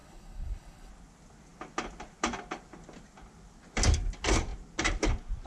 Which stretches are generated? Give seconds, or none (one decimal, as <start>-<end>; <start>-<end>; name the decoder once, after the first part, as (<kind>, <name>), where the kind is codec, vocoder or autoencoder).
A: 0.0-0.9 (codec, HILCodec)